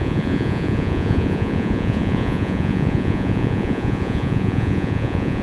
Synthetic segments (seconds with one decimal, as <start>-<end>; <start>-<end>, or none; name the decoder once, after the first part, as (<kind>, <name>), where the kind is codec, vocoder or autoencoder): 0.0-5.4 (vocoder, Vocos)